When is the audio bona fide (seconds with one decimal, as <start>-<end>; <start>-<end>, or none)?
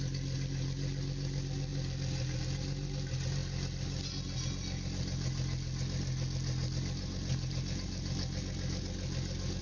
0.0-9.6